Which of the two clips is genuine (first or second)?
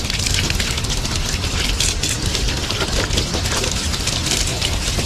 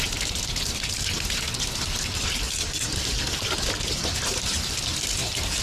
first